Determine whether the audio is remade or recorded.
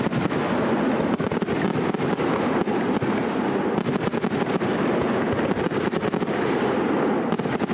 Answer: recorded